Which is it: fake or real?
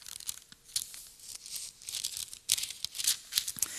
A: real